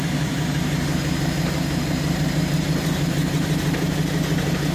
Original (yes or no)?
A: no